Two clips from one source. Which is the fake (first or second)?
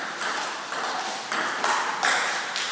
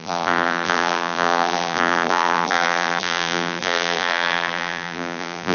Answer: second